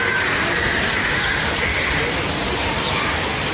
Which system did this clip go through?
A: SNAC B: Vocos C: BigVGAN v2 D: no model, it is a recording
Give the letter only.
D